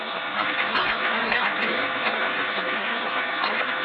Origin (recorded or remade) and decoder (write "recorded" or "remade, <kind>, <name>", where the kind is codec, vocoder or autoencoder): remade, codec, SNAC